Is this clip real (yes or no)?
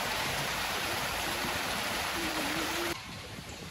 no